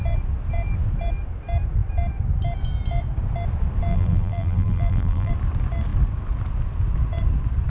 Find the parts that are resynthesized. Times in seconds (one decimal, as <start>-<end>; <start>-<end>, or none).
3.9-5.3